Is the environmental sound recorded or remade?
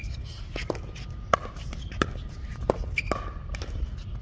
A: recorded